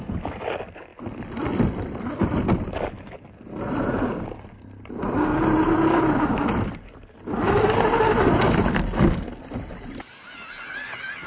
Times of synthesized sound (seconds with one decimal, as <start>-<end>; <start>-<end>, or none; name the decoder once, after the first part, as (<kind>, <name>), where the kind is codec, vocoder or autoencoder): none

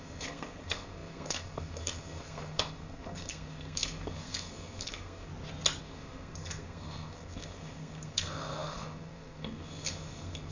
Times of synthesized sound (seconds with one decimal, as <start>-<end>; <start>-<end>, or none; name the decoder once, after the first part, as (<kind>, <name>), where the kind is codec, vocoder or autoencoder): 0.0-5.3 (codec, SNAC); 5.8-10.5

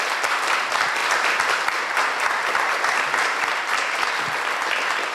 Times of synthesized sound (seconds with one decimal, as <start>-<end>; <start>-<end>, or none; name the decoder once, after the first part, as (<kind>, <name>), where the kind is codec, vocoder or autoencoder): none

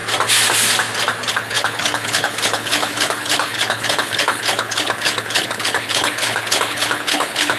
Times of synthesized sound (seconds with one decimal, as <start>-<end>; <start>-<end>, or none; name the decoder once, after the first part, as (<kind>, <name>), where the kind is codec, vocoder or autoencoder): 1.3-7.6 (codec, HILCodec)